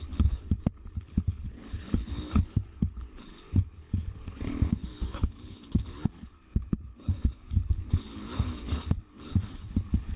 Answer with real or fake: fake